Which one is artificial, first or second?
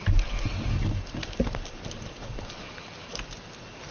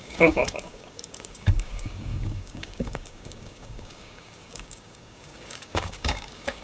second